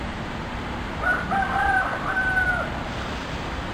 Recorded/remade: remade